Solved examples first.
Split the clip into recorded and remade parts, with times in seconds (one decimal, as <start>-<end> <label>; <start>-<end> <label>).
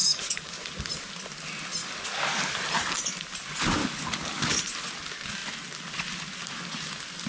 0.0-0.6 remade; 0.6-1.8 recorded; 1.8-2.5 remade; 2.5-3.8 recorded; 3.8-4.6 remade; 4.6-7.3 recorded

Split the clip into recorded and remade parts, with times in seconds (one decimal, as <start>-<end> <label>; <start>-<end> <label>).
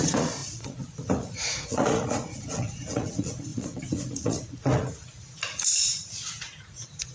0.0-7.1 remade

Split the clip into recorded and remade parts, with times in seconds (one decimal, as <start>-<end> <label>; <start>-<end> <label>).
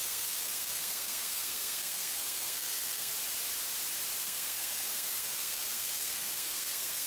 0.0-3.1 remade; 3.1-4.2 recorded; 4.2-7.1 remade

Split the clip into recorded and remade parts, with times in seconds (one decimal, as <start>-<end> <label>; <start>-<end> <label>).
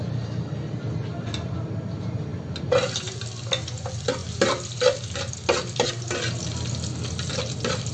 0.0-7.9 recorded